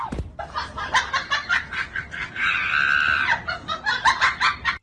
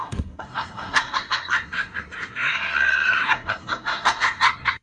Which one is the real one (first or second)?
first